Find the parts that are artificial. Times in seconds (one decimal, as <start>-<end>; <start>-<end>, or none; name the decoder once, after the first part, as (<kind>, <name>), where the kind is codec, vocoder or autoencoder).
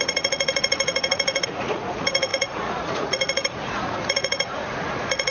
0.0-5.3 (vocoder, Vocos)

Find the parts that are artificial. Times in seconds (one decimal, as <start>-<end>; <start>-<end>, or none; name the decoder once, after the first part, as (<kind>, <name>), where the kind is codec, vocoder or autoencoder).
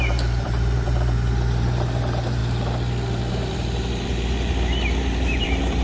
0.0-2.4 (vocoder, BigVGAN v2); 3.3-5.8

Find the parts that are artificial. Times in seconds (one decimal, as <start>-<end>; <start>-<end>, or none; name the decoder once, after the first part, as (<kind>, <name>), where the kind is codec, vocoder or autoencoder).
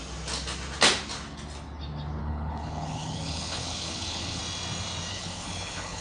2.2-4.4 (codec, HILCodec); 5.1-6.0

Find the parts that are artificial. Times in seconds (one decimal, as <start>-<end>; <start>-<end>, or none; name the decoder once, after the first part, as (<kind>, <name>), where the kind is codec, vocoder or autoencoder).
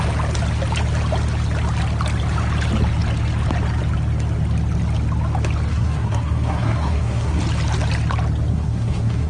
5.7-7.4 (codec, SNAC); 8.5-9.3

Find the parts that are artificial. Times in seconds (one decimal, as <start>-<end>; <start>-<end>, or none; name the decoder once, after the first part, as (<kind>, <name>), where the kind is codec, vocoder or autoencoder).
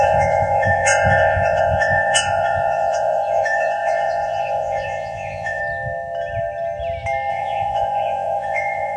0.0-5.6 (vocoder, Vocos); 7.3-9.0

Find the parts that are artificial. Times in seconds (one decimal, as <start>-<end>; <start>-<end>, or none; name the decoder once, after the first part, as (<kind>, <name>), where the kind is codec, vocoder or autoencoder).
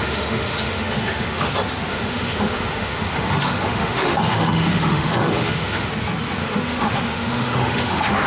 0.0-1.5 (autoencoder, DAC-VAE); 1.9-5.9; 6.4-8.3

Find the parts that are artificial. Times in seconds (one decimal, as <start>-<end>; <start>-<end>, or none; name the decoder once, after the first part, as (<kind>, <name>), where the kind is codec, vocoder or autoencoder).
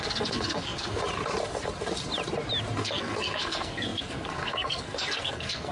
0.0-1.0 (codec, SNAC); 2.8-5.7